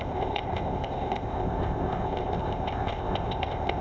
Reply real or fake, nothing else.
fake